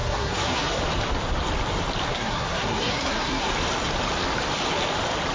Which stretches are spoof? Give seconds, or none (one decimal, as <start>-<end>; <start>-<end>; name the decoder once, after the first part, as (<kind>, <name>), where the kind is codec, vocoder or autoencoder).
0.0-0.8 (codec, SNAC); 2.1-3.5